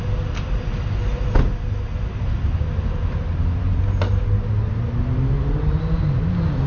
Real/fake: real